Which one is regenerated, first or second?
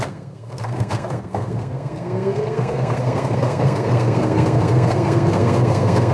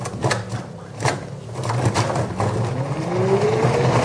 first